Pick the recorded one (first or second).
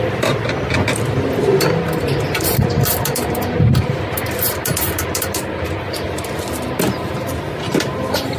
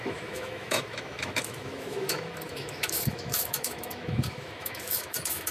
first